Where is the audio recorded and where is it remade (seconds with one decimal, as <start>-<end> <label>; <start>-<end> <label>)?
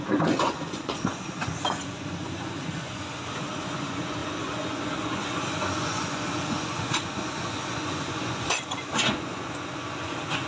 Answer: 0.0-10.5 remade